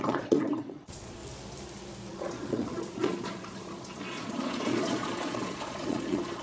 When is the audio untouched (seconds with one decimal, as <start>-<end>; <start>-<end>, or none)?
1.2-2.1